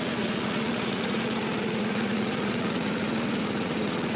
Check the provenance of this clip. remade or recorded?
remade